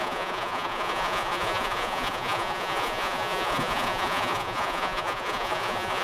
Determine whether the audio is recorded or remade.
remade